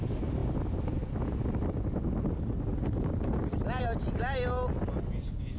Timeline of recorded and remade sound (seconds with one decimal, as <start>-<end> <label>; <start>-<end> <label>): 0.0-5.6 recorded

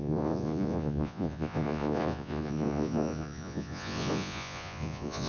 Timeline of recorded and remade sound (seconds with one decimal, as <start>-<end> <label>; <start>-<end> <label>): 0.0-5.3 remade

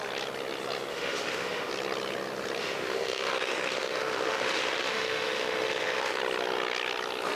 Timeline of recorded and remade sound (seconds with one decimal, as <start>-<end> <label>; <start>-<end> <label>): 0.0-0.9 recorded; 0.9-1.7 remade; 1.7-2.6 recorded; 2.6-6.2 remade; 6.2-7.4 recorded

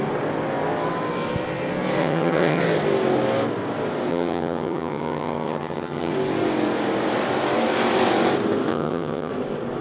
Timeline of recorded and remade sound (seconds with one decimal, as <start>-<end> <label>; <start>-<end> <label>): 0.0-2.0 recorded; 2.0-2.6 remade; 2.6-4.1 recorded; 4.1-6.1 remade; 6.1-8.7 recorded; 8.7-9.3 remade; 9.3-9.8 recorded